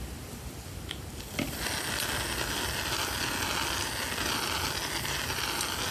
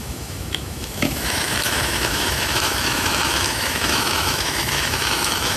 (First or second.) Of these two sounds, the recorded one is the first